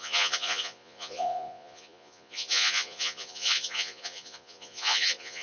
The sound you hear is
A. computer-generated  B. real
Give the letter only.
A